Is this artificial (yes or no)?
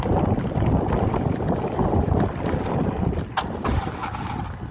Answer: no